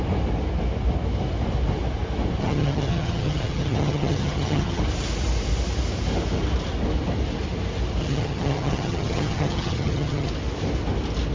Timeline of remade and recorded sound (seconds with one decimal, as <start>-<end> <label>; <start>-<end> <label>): 0.0-2.4 recorded; 2.4-4.8 remade; 4.8-8.0 recorded; 8.0-10.3 remade; 10.3-11.3 recorded